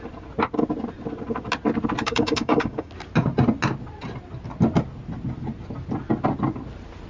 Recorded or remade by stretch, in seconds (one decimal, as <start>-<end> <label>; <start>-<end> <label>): 0.0-2.0 recorded; 2.0-2.9 remade; 2.9-7.1 recorded